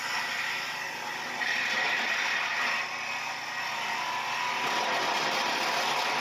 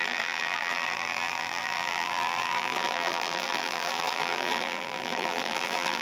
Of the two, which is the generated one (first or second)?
second